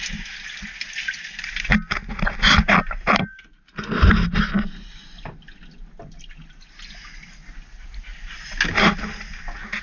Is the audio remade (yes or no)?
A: no